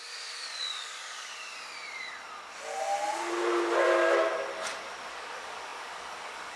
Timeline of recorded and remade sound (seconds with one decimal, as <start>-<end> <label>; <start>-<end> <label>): 0.0-1.5 remade; 1.5-5.1 recorded; 5.1-6.6 remade

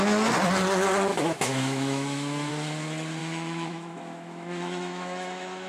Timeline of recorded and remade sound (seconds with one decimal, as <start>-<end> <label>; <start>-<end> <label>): 0.0-1.1 recorded; 1.1-2.5 remade; 2.5-3.2 recorded; 3.2-5.7 remade

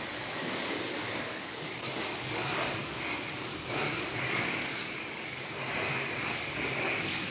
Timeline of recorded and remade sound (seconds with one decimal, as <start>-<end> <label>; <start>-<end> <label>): 0.0-7.3 remade

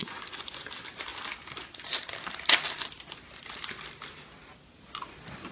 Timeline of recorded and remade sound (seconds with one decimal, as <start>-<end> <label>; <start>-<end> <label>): 0.0-0.7 remade; 0.7-5.5 recorded

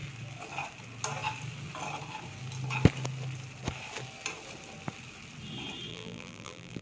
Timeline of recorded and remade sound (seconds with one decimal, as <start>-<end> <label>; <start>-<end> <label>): 0.0-5.9 recorded; 5.9-6.8 remade

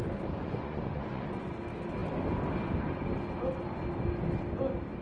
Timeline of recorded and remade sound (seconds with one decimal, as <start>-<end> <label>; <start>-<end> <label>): 0.0-0.4 recorded; 0.4-1.5 remade; 1.5-5.0 recorded